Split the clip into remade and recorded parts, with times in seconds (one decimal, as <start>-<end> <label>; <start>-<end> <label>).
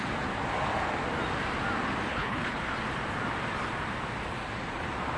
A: 0.0-2.1 recorded; 2.1-2.6 remade; 2.6-5.2 recorded